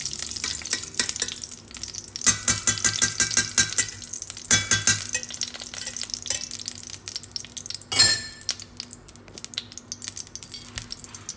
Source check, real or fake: real